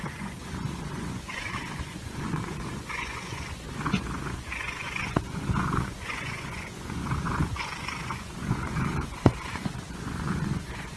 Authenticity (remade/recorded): remade